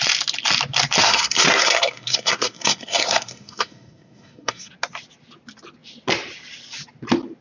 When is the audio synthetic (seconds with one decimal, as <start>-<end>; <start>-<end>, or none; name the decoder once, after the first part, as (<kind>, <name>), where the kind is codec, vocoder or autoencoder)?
1.0-4.7 (codec, SNAC)